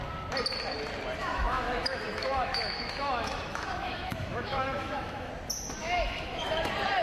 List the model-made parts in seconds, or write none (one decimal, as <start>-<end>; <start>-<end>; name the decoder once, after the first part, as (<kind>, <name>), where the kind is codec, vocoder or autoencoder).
1.2-5.3 (autoencoder, DAC-VAE); 5.8-6.6